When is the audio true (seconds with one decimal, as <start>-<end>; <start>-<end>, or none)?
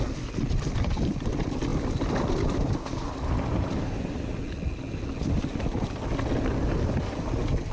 0.0-7.7